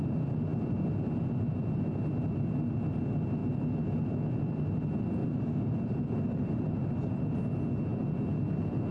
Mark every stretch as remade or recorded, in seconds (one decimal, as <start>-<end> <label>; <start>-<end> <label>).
0.0-5.2 recorded; 5.2-6.9 remade; 6.9-8.9 recorded